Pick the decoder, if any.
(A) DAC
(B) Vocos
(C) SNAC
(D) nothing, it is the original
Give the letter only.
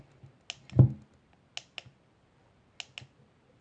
D